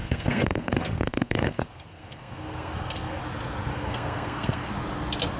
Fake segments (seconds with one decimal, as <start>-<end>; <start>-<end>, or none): 0.0-3.2; 3.7-4.7